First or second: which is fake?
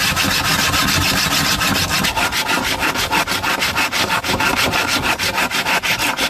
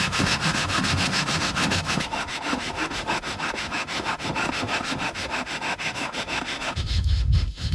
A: second